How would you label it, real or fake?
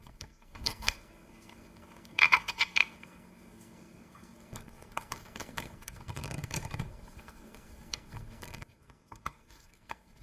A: fake